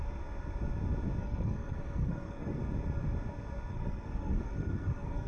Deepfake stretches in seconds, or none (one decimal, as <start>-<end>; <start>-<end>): 1.2-2.6; 3.7-5.3